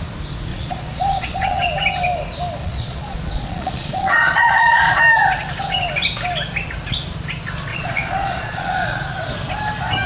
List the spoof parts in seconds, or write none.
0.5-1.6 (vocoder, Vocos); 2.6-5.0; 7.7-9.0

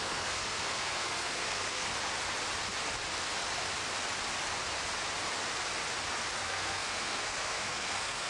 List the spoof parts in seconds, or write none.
0.0-1.9 (codec, SNAC); 6.4-8.3

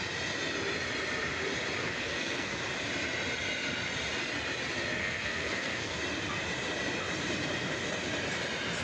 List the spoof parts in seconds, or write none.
1.8-2.6 (codec, SNAC); 5.0-6.0

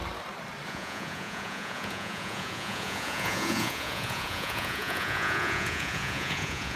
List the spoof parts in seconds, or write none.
0.7-6.8 (vocoder, Vocos)

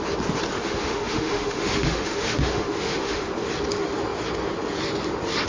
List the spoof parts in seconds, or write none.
0.6-3.3 (autoencoder, DAC-VAE)

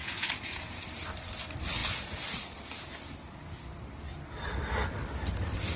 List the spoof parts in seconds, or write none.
0.0-0.9 (vocoder, Vocos)

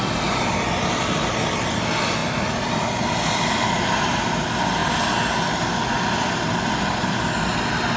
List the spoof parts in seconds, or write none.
none